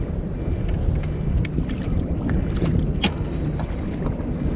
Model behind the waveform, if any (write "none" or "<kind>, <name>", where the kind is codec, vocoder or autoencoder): none